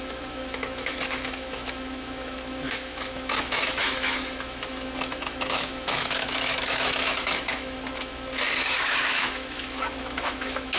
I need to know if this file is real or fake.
fake